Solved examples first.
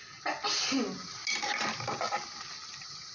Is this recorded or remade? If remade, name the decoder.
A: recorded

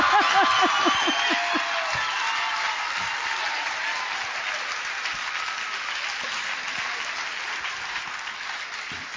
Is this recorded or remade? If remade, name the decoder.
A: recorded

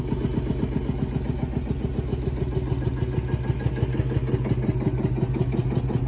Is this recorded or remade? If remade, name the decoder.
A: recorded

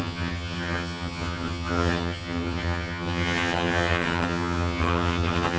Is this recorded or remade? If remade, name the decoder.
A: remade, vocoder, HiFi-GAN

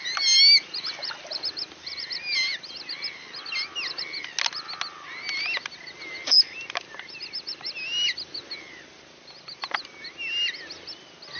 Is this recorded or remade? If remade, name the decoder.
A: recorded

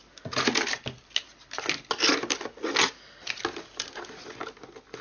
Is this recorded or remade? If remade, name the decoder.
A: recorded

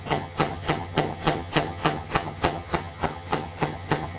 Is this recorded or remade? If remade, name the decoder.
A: remade, vocoder, HiFi-GAN